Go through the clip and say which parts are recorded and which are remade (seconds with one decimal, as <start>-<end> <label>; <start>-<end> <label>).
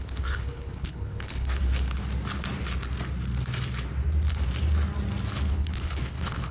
0.0-1.6 remade; 1.6-5.5 recorded; 5.5-6.5 remade